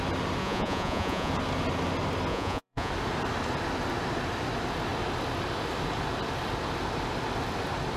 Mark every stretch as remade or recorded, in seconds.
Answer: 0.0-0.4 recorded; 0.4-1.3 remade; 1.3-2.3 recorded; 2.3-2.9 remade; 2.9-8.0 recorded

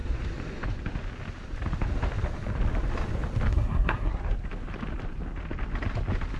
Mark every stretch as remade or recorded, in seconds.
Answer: 0.0-3.5 recorded; 3.5-4.2 remade; 4.2-6.4 recorded